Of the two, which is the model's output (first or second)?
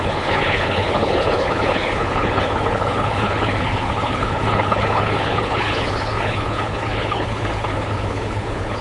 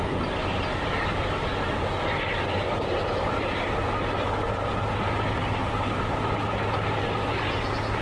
first